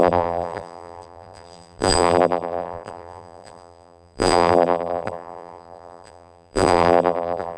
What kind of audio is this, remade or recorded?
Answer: remade